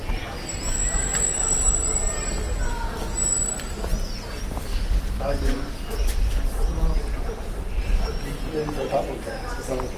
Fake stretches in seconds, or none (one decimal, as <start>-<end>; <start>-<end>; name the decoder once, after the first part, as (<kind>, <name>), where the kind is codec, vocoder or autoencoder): none